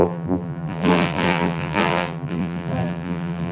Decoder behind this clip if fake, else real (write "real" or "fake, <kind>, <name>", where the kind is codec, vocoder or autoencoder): fake, vocoder, BigVGAN v2